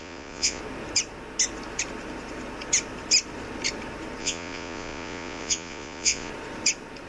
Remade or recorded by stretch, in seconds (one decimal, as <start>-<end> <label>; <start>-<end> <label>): 0.0-0.6 remade; 0.6-4.2 recorded; 4.2-6.3 remade; 6.3-7.1 recorded